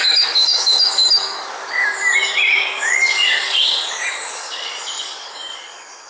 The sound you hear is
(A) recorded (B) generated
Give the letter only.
B